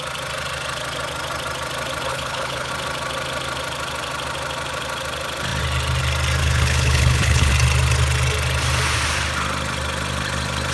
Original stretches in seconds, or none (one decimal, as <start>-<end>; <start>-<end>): 0.0-2.1; 2.7-6.4; 7.5-10.7